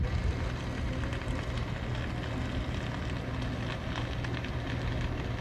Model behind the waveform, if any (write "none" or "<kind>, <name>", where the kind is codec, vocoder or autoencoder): none